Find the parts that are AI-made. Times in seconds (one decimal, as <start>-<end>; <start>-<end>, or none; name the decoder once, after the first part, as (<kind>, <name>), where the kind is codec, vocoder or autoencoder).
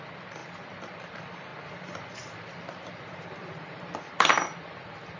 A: 0.0-5.2 (vocoder, BigVGAN v2)